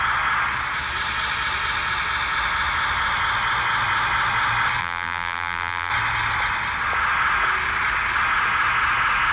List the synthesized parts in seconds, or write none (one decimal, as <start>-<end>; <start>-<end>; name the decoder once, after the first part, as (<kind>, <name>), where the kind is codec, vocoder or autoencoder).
4.8-5.9 (vocoder, BigVGAN v2)